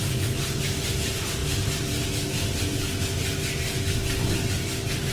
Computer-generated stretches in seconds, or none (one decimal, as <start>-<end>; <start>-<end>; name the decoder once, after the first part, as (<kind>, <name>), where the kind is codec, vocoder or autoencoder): none